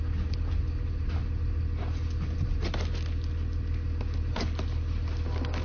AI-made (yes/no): no